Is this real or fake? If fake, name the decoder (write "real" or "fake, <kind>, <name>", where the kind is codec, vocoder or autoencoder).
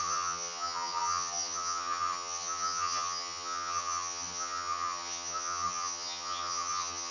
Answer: fake, vocoder, HiFi-GAN